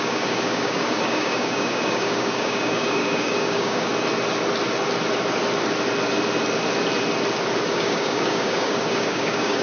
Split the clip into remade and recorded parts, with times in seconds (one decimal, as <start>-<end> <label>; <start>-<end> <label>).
0.0-3.9 remade; 3.9-7.7 recorded; 7.7-9.6 remade

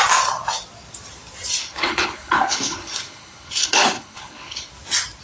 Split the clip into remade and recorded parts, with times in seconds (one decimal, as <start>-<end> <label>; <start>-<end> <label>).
0.0-1.6 recorded; 1.6-4.7 remade; 4.7-5.2 recorded

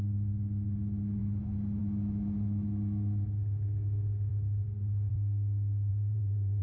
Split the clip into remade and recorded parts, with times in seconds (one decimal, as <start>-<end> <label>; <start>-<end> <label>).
0.0-5.9 recorded; 5.9-6.6 remade

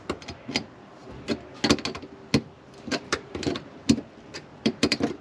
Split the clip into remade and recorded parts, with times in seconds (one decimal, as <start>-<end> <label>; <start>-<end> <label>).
0.0-2.9 recorded; 2.9-3.6 remade; 3.6-4.5 recorded; 4.5-5.2 remade

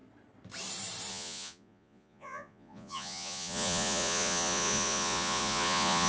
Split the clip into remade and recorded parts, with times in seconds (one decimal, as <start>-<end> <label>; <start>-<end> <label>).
0.0-1.1 recorded; 1.1-6.1 remade

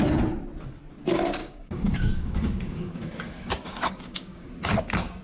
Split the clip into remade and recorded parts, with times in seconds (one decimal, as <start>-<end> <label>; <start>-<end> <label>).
0.0-1.4 recorded; 1.4-4.5 remade; 4.5-5.2 recorded

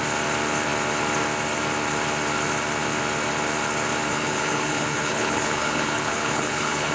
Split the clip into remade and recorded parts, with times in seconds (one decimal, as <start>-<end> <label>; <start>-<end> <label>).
0.0-4.1 recorded; 4.1-6.9 remade